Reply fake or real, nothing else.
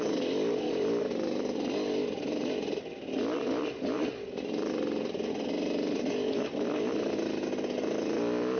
real